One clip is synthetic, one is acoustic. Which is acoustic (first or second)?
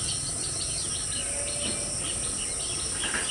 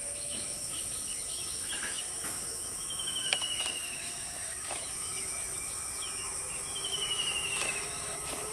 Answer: first